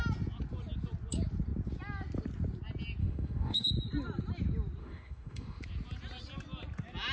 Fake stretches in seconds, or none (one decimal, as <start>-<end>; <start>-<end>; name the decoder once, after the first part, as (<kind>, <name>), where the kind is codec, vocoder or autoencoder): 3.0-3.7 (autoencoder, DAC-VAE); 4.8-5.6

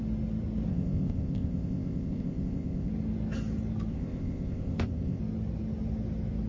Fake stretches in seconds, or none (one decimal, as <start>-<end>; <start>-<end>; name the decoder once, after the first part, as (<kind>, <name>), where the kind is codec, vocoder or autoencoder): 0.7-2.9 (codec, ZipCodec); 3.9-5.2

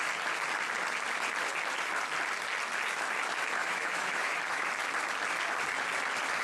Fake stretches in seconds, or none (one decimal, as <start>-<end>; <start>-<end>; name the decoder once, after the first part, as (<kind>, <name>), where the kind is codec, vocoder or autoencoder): 3.6-4.7 (autoencoder, DAC-VAE)

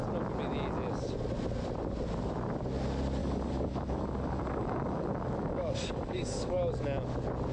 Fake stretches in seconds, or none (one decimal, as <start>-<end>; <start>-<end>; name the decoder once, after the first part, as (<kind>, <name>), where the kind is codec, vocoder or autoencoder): 3.2-6.6 (codec, DAC)

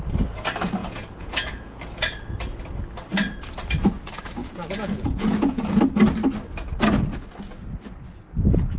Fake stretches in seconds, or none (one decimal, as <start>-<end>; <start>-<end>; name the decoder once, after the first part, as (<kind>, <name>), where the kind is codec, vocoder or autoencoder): 0.8-1.8 (vocoder, Vocos); 4.4-5.8

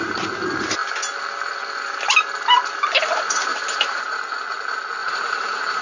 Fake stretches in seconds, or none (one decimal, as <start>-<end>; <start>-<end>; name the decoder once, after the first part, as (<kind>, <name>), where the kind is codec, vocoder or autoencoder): 3.5-4.3 (vocoder, BigVGAN v2); 5.0-5.8